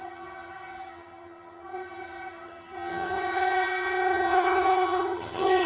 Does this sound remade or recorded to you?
remade